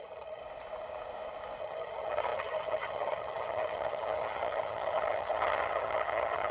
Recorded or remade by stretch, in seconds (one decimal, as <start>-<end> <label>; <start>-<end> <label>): 0.0-0.4 remade; 0.4-1.6 recorded; 1.6-6.5 remade